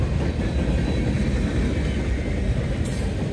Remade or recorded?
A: recorded